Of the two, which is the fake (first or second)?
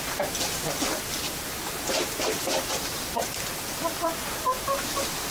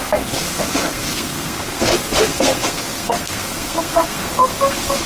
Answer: second